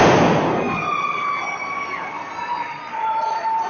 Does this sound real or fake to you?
real